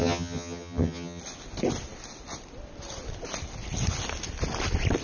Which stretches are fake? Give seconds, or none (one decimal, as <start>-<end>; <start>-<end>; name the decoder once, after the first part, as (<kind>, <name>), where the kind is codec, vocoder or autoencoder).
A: 0.0-1.2 (vocoder, HiFi-GAN)

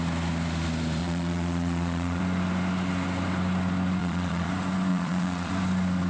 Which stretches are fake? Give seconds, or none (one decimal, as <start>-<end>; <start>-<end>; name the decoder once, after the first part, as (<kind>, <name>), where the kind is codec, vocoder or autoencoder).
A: 1.0-2.2 (vocoder, Vocos); 4.0-4.5; 4.9-5.5

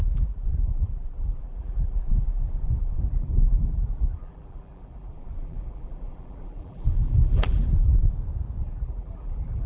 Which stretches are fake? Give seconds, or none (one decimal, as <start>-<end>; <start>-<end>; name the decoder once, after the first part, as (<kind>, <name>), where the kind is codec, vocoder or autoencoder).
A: 0.0-7.9 (vocoder, BigVGAN v2); 8.6-9.7

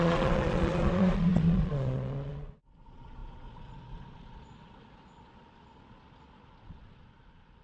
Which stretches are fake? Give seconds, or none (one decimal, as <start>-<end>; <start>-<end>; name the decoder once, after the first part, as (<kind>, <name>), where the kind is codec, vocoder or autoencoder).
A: 0.0-7.6 (vocoder, Vocos)

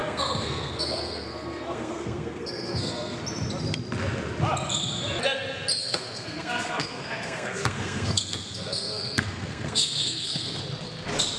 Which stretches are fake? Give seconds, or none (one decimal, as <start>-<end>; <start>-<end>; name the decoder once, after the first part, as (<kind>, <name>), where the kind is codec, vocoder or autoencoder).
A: 0.0-3.2 (codec, SNAC); 5.8-10.6

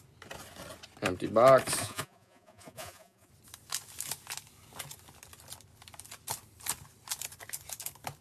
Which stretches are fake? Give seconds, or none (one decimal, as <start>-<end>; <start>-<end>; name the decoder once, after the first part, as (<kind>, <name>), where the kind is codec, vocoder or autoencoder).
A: 1.8-3.3 (vocoder, Vocos)

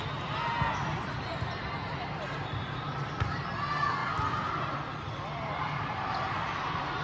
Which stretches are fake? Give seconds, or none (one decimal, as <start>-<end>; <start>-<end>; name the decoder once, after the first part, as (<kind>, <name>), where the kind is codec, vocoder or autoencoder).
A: none

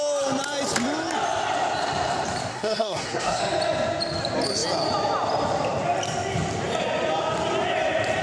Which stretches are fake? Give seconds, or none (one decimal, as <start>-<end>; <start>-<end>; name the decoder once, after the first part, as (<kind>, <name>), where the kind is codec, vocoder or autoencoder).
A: 2.5-3.4 (codec, SNAC)